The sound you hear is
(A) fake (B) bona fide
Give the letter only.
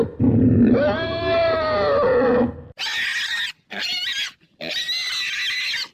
B